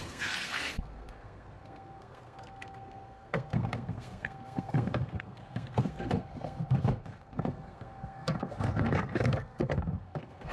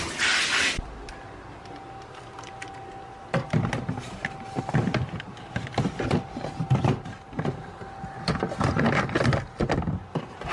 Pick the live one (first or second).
second